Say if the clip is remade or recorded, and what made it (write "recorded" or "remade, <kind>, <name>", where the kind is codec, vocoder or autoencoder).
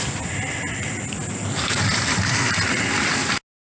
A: recorded